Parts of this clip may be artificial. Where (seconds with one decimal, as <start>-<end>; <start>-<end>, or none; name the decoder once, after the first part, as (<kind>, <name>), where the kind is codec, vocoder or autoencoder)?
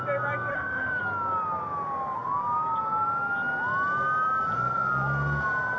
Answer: 0.5-1.0 (autoencoder, DAC-VAE)